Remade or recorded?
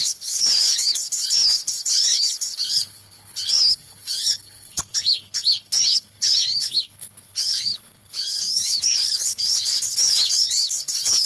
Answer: remade